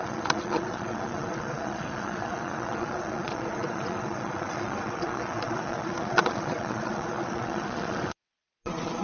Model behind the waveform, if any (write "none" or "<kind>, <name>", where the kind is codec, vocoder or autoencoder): vocoder, Vocos